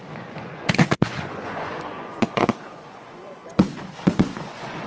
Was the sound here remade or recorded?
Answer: remade